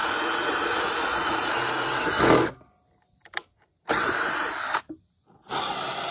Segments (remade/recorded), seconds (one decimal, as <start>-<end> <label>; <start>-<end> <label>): 0.0-2.0 remade; 2.0-6.1 recorded